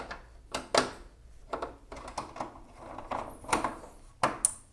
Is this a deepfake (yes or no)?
no